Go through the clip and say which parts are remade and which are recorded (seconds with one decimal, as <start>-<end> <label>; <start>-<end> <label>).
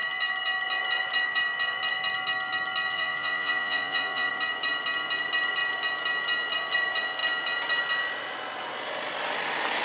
0.0-2.9 recorded; 2.9-4.3 remade; 4.3-9.8 recorded